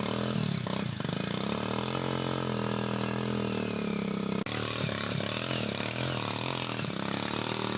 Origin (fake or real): real